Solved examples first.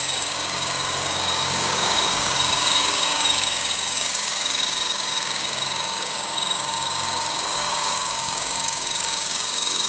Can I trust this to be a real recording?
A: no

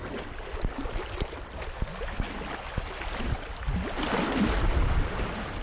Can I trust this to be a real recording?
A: yes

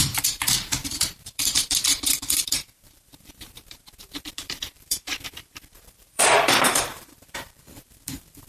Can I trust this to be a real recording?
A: no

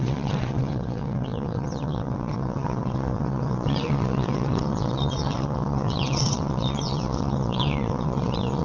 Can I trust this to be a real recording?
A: no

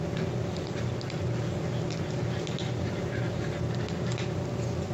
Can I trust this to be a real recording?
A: yes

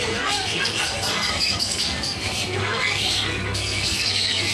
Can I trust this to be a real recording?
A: no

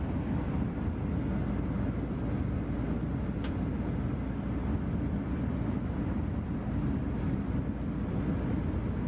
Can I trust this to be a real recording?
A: yes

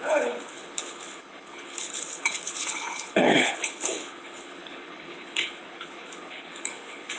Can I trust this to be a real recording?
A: no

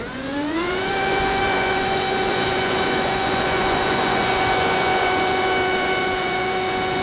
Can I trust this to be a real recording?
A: no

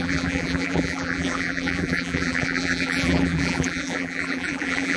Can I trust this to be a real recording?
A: no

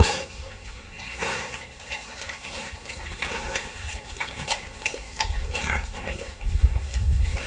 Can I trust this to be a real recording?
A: no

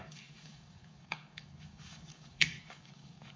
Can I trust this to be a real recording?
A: no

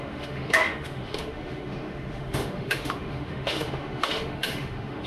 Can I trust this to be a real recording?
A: no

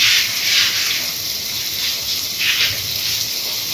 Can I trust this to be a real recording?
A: yes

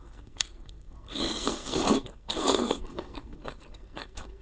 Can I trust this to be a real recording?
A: no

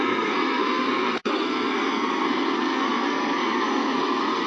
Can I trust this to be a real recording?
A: no